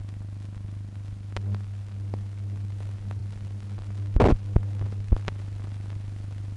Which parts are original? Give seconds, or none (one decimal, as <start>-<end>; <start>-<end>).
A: 0.0-6.6